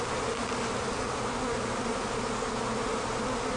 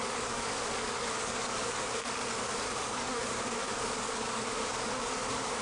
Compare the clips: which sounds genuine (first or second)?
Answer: first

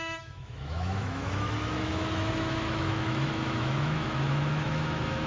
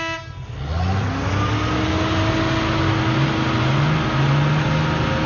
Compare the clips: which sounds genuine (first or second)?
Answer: second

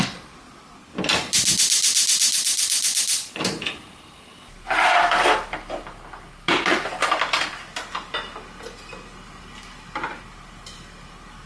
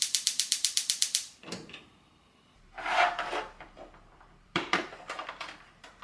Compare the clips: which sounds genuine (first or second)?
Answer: first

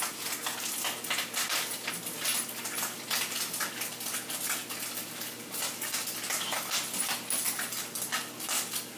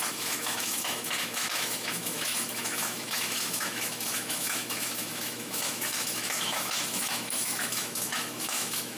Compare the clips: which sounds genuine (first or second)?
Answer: first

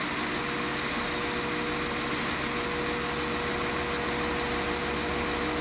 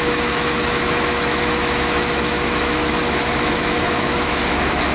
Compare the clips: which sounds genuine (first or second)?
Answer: first